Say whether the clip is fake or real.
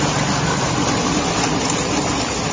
real